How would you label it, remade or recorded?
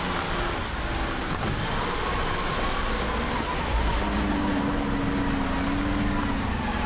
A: recorded